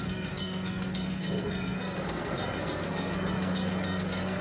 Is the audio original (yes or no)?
no